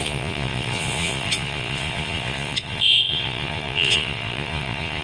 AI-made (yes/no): yes